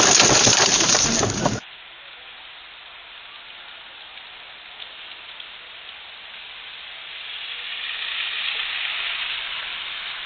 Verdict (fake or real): real